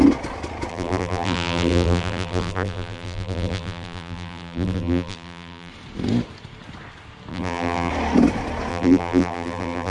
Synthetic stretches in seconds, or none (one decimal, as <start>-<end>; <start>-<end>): 0.7-5.7; 7.3-7.9; 8.7-9.9